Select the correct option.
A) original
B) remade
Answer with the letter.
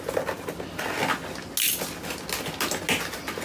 A